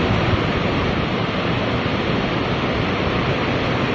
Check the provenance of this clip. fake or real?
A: real